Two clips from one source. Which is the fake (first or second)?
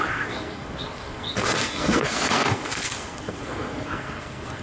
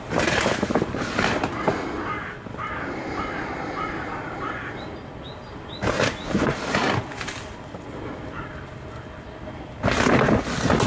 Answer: first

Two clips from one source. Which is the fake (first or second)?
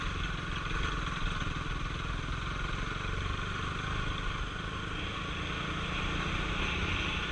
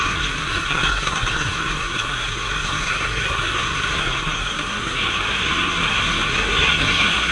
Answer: second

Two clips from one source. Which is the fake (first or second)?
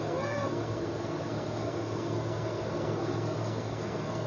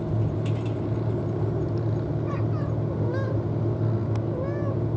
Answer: first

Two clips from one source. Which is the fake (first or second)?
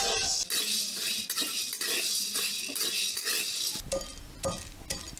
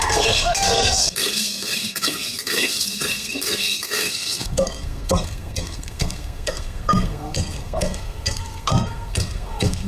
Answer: second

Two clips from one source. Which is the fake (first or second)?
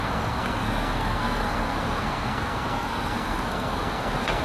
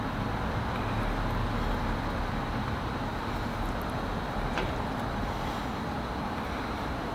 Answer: first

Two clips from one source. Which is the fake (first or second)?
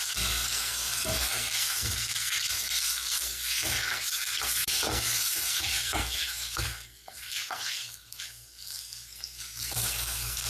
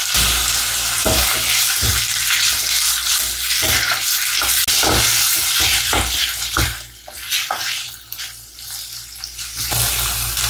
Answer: first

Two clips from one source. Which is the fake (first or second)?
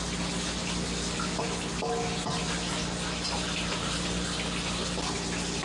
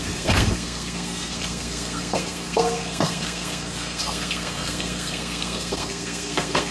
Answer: second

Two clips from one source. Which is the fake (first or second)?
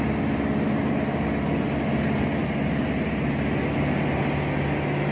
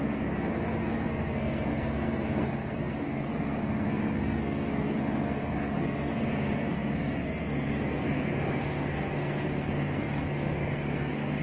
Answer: second